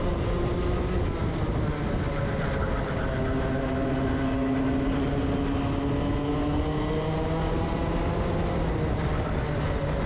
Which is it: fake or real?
real